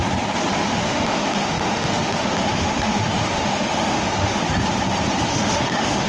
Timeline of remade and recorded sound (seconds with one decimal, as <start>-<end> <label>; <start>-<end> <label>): 0.0-0.7 recorded; 0.7-4.4 remade; 4.4-5.3 recorded; 5.3-6.1 remade